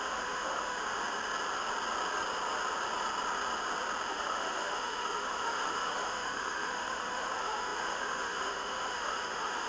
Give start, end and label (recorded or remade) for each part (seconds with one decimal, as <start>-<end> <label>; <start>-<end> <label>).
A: 0.0-0.8 remade; 0.8-4.1 recorded; 4.1-9.7 remade